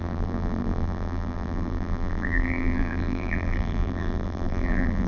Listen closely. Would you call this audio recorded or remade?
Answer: remade